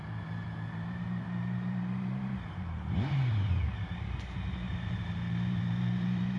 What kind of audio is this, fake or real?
fake